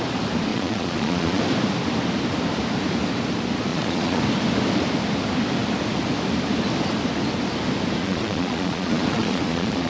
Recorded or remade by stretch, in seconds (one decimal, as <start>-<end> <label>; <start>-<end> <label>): 0.0-0.5 recorded; 0.5-1.4 remade; 1.4-3.7 recorded; 3.7-4.2 remade; 4.2-8.0 recorded; 8.0-9.9 remade